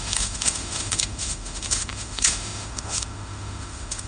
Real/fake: fake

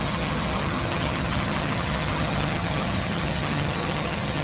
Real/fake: fake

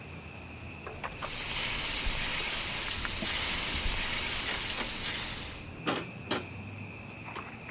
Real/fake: real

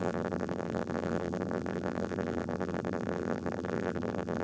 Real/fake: fake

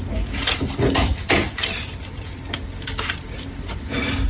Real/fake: real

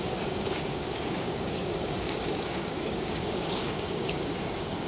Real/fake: fake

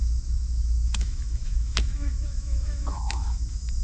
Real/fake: fake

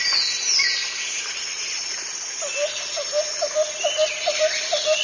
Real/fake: real